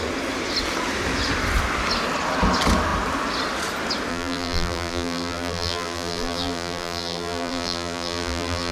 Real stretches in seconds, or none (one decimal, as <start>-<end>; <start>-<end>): 0.0-4.1